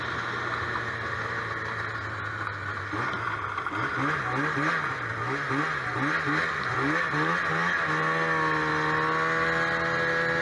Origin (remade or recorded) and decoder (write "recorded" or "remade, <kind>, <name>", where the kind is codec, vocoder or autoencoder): recorded